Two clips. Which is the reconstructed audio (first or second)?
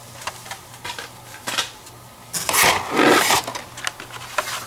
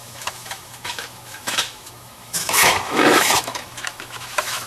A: second